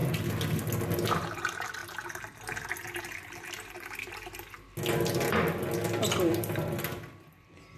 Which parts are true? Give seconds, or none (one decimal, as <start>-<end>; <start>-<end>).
0.0-7.8